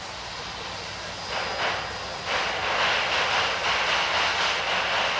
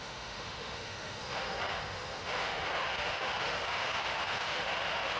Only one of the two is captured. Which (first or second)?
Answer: first